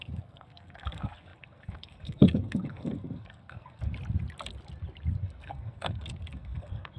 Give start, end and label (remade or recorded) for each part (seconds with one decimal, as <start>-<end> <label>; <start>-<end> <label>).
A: 0.0-3.9 remade; 3.9-5.2 recorded; 5.2-7.0 remade